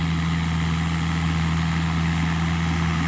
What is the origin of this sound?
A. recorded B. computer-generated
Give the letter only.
A